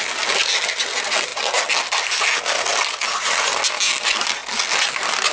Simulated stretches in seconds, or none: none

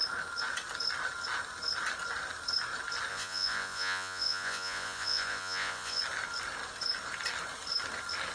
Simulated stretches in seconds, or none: 3.1-6.0 (vocoder, Vocos)

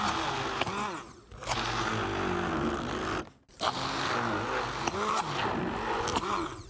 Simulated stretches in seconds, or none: none